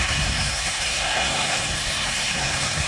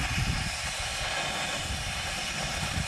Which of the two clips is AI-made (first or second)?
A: first